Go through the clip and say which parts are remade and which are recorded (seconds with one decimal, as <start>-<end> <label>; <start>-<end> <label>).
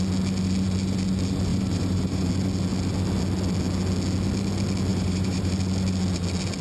0.0-1.5 recorded; 1.5-2.3 remade; 2.3-4.9 recorded; 4.9-5.5 remade; 5.5-6.6 recorded